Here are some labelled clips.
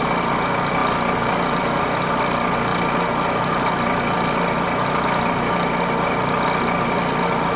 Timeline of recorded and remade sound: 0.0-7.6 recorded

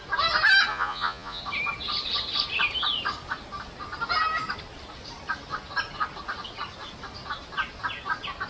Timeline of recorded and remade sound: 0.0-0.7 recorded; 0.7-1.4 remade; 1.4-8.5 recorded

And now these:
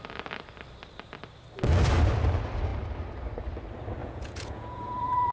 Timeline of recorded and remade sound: 0.0-4.0 recorded; 4.0-5.3 remade

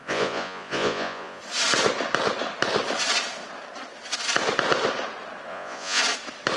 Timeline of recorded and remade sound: 0.0-1.4 remade; 1.4-5.5 recorded; 5.5-6.0 remade; 6.0-6.6 recorded

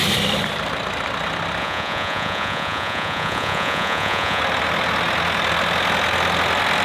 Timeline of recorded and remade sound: 0.0-1.6 recorded; 1.6-4.4 remade; 4.4-6.8 recorded

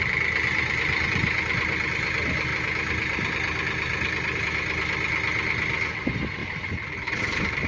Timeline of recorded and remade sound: 0.0-7.7 recorded